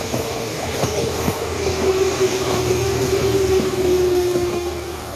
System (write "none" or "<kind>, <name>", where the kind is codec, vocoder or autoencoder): codec, DAC